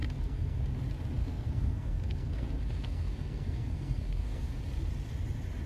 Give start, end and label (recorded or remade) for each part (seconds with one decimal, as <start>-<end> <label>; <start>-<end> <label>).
0.0-0.6 remade; 0.6-1.2 recorded; 1.2-4.6 remade; 4.6-5.7 recorded